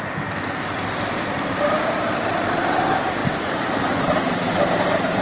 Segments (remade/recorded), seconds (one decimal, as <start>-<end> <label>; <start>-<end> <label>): 0.0-3.2 recorded; 3.2-4.6 remade; 4.6-5.2 recorded